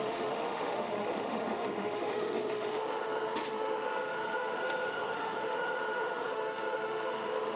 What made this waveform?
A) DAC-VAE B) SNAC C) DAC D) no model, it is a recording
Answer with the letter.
A